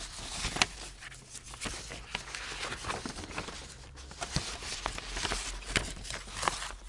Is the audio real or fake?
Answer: real